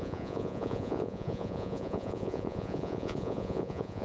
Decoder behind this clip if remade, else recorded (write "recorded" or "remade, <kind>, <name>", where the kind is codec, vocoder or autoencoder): remade, vocoder, Vocos